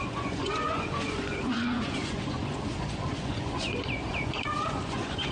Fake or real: fake